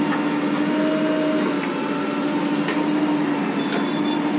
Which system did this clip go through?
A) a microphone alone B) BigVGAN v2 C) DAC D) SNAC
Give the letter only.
A